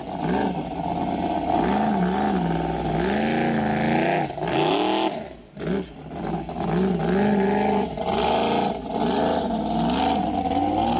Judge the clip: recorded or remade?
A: recorded